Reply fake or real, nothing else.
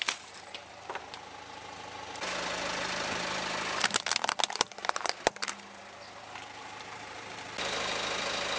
real